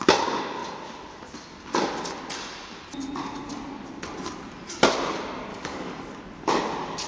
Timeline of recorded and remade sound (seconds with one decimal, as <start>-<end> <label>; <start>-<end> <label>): 0.0-5.5 recorded; 5.5-6.2 remade; 6.2-7.1 recorded